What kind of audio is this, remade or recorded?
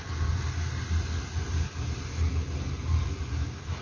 recorded